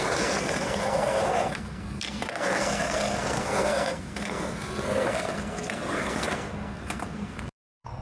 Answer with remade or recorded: remade